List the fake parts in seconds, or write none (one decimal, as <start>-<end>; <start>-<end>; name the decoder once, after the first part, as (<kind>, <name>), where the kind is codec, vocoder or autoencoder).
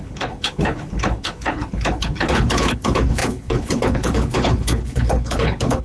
0.0-5.8 (codec, HILCodec)